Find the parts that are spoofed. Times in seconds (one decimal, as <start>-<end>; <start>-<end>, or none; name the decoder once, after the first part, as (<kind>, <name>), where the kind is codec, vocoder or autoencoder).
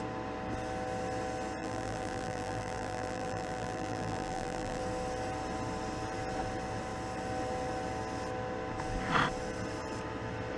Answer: 1.6-4.8 (vocoder, BigVGAN v2)